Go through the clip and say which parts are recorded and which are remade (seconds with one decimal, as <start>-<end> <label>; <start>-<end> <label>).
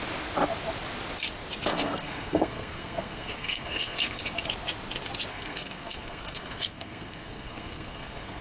0.0-1.7 recorded; 1.7-4.2 remade; 4.2-5.3 recorded; 5.3-8.4 remade